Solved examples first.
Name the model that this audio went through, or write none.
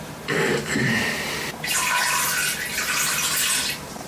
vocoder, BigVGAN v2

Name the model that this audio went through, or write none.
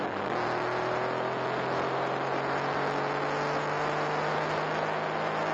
none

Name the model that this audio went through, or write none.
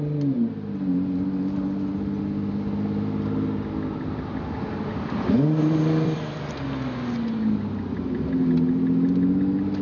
none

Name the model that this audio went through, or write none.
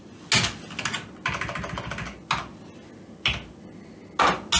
none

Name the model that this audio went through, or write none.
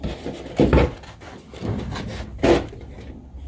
none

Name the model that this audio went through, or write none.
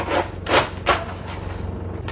none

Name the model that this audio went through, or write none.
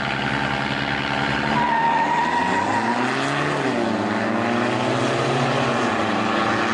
none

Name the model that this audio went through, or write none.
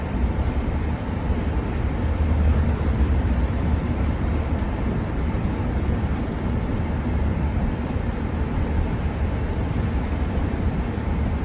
vocoder, BigVGAN v2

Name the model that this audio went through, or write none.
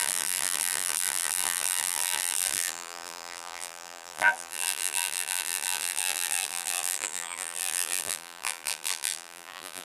vocoder, BigVGAN v2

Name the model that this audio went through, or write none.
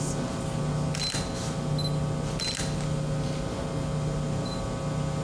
none